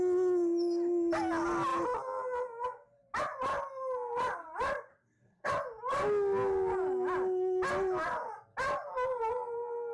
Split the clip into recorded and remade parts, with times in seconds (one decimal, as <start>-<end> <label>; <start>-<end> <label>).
0.0-4.9 recorded; 4.9-5.5 remade; 5.5-9.9 recorded